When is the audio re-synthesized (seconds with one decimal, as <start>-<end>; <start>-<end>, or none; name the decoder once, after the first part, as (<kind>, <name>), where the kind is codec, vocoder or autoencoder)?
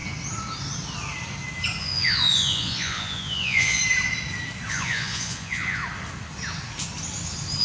1.8-3.8 (vocoder, Vocos); 4.7-5.8